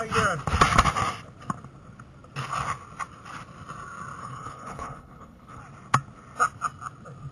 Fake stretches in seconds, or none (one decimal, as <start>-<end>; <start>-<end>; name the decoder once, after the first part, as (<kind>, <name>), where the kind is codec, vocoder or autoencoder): 4.2-5.6 (codec, HILCodec)